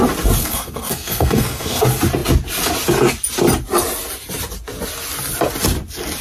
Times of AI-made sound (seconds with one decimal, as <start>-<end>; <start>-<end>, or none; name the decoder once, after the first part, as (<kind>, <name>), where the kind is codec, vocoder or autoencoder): 0.4-1.8 (codec, SNAC)